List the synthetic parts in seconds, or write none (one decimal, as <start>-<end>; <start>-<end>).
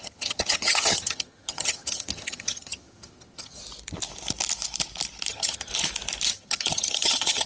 0.0-3.6; 5.3-5.7; 6.3-7.5